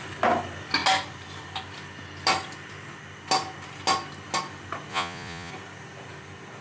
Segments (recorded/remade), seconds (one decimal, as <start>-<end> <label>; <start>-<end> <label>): 0.0-4.9 recorded; 4.9-5.5 remade; 5.5-6.6 recorded